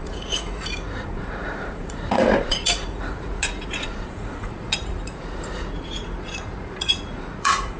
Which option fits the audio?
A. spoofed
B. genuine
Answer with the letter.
A